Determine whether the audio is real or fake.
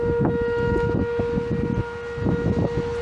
real